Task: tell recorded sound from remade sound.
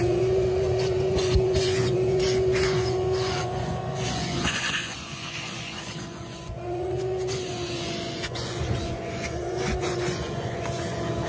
remade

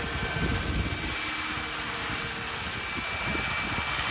recorded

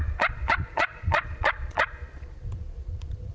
remade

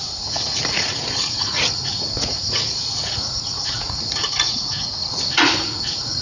remade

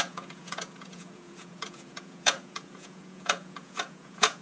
remade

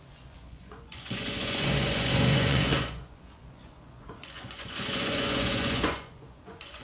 remade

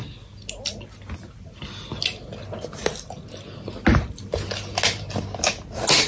recorded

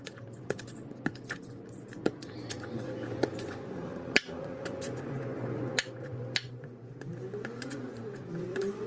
remade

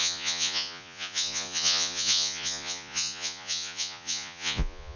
remade